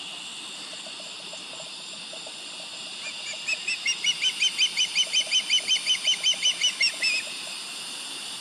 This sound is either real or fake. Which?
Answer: real